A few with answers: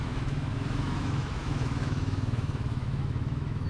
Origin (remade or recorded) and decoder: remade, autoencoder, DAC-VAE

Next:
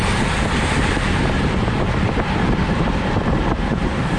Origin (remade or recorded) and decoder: remade, vocoder, BigVGAN v2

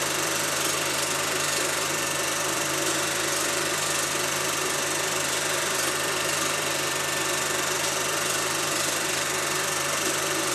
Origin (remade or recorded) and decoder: remade, vocoder, BigVGAN v2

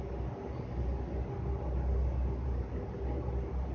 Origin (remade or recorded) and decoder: recorded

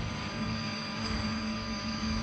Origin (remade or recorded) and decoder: remade, codec, DAC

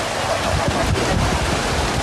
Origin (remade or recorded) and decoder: recorded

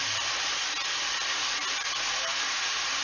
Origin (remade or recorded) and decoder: recorded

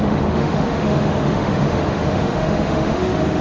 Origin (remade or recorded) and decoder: remade, autoencoder, DAC-VAE